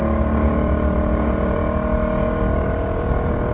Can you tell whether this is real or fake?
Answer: fake